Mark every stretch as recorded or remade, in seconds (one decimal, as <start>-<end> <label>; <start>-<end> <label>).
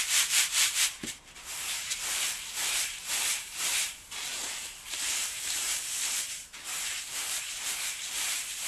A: 0.0-8.7 remade